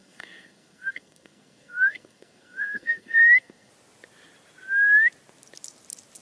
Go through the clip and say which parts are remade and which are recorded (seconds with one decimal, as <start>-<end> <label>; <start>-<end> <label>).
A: 0.0-3.7 remade; 3.7-6.2 recorded